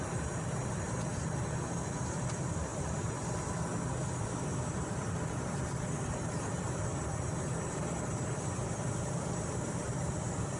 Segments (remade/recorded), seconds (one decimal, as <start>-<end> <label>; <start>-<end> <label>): 0.0-10.6 remade